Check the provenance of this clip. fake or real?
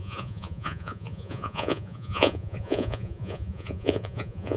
fake